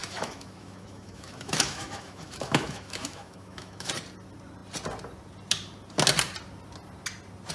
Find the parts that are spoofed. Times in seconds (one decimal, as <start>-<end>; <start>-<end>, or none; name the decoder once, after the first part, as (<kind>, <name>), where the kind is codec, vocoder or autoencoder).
0.0-3.9 (autoencoder, DAC-VAE)